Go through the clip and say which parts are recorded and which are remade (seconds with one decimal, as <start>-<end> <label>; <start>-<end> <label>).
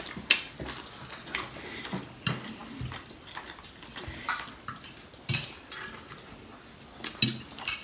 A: 0.0-7.8 recorded